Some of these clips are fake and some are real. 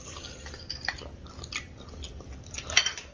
real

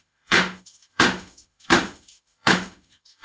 fake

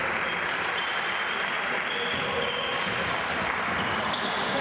real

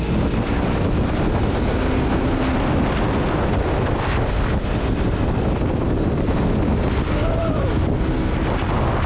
real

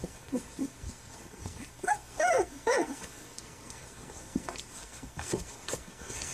fake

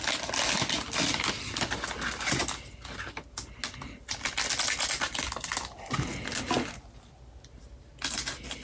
real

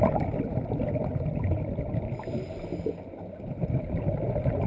real